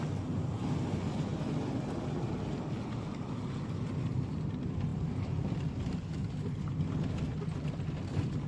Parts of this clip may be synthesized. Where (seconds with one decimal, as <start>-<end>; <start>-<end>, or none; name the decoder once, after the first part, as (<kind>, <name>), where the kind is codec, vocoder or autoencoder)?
4.9-6.9 (vocoder, BigVGAN v2)